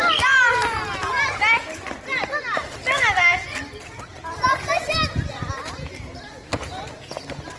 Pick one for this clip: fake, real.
real